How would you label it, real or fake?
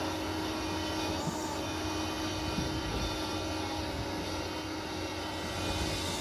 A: real